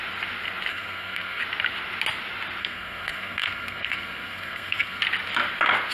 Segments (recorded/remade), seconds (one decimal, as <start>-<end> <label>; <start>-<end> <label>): 0.0-0.7 recorded; 0.7-1.4 remade; 1.4-2.6 recorded; 2.6-5.0 remade; 5.0-5.9 recorded